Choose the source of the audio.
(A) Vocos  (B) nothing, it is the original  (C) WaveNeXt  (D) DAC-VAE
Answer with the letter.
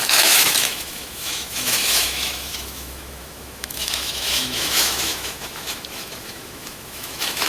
D